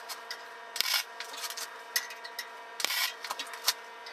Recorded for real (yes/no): yes